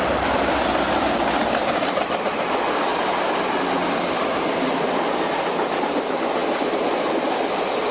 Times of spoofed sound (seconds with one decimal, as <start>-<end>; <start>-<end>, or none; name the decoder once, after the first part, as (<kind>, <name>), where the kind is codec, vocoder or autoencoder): none